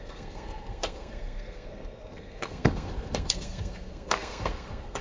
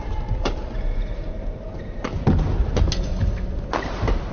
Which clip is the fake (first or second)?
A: first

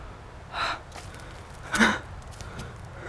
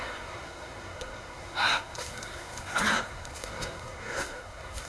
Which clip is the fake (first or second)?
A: second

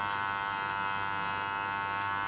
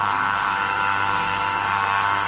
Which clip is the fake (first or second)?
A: second